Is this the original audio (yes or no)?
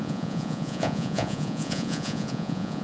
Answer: no